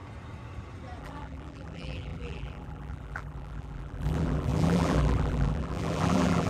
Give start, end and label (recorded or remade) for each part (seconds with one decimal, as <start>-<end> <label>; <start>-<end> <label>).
0.0-1.0 recorded; 1.0-6.5 remade